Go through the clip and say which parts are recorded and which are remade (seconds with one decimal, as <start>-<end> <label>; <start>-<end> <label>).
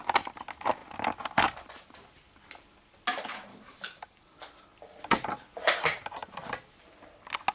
0.0-3.5 recorded; 3.5-4.4 remade; 4.4-7.5 recorded